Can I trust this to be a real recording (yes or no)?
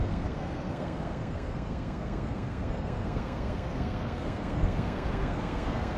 no